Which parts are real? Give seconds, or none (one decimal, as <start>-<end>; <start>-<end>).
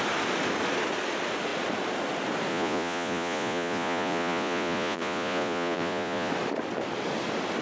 0.0-2.5; 6.3-7.6